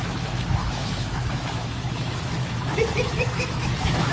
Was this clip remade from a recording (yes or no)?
yes